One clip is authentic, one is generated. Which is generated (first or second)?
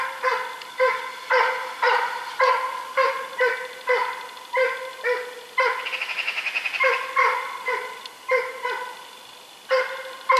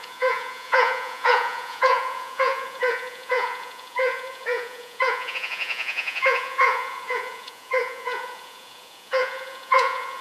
second